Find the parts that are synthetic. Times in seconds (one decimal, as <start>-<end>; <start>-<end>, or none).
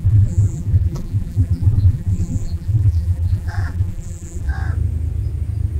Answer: 0.0-4.5